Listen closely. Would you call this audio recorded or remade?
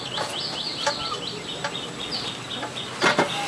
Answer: recorded